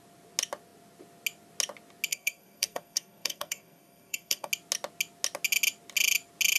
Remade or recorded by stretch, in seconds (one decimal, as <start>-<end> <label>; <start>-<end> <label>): 0.0-2.1 recorded; 2.1-4.5 remade; 4.5-6.6 recorded